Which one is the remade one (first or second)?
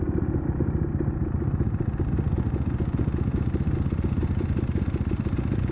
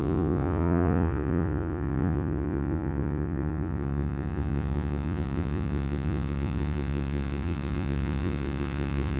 second